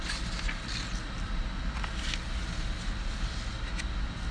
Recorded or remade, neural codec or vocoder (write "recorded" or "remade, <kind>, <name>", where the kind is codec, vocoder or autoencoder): recorded